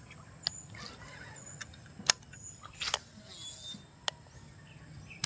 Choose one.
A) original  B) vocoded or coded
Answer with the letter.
A